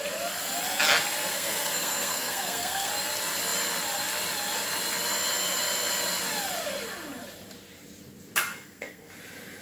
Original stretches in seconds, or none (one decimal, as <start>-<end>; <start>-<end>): 0.0-1.3; 2.9-8.5; 9.1-9.6